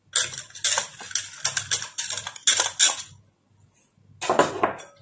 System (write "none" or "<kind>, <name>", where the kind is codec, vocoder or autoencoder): none